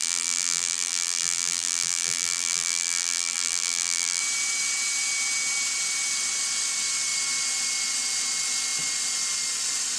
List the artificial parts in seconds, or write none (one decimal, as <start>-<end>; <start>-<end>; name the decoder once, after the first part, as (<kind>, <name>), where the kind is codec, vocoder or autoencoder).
0.0-4.2 (vocoder, BigVGAN v2)